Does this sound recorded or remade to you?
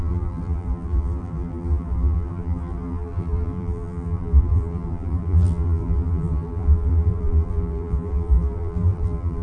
remade